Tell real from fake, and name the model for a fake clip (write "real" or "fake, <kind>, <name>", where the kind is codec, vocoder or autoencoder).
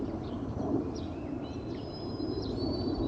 fake, vocoder, BigVGAN v2